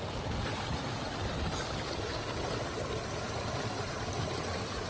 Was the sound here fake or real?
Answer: real